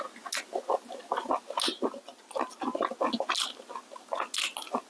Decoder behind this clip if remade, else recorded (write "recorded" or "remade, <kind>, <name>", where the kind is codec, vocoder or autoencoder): recorded